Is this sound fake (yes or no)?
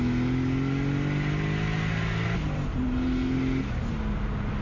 no